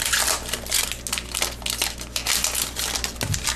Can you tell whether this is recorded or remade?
recorded